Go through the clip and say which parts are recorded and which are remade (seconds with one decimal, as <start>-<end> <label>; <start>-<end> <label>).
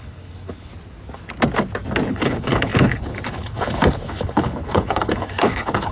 0.0-0.7 remade; 0.7-2.1 recorded; 2.1-5.9 remade